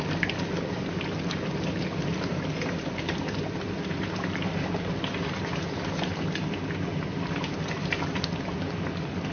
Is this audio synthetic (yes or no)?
no